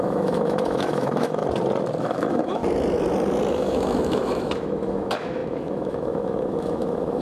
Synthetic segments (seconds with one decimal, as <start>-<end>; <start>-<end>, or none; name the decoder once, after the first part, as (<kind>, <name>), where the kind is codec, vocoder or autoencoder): 0.0-1.4 (autoencoder, DAC-VAE); 2.0-2.6; 3.5-7.2